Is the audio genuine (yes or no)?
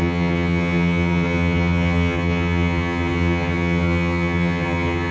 no